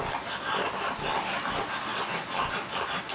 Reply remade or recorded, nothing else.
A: recorded